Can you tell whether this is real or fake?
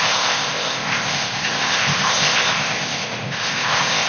fake